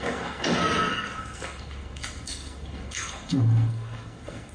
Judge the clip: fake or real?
fake